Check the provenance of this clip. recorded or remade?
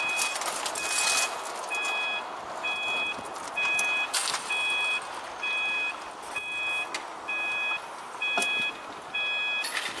recorded